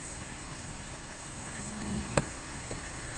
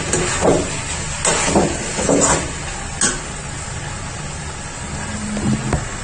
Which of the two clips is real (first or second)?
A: second